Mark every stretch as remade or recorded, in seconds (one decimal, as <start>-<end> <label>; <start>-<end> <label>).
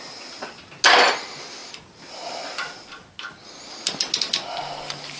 0.0-5.2 recorded